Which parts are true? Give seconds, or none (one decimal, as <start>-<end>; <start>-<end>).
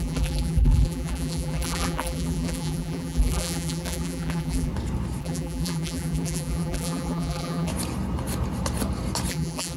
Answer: 4.7-5.2; 7.7-9.3